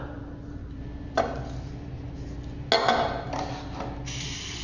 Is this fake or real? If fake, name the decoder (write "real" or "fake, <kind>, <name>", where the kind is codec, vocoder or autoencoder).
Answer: real